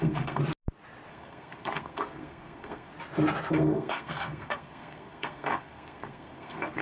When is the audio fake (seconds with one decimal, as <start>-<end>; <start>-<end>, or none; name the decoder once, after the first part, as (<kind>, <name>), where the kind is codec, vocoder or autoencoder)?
0.0-0.4 (codec, SNAC); 1.1-2.9; 3.5-6.8